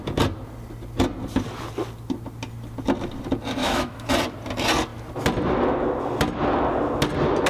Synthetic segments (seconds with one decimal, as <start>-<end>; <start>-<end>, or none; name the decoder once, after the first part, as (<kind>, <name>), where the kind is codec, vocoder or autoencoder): 3.6-4.1 (autoencoder, DAC-VAE)